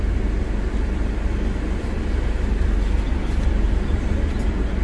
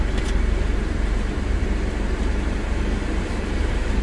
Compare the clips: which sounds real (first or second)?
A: first